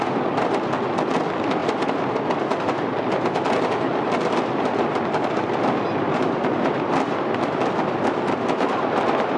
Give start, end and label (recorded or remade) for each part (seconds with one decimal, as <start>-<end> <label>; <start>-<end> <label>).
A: 0.0-9.4 recorded